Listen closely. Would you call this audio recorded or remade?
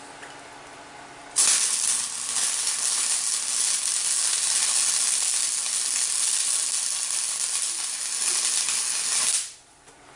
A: recorded